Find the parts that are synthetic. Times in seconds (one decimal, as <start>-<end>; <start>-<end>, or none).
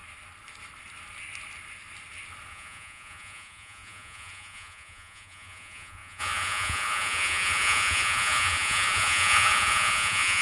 2.5-10.4